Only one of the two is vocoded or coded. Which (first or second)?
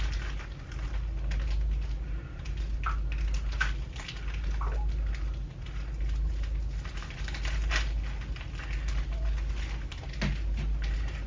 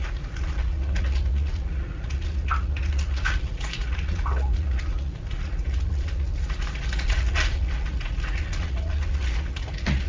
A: second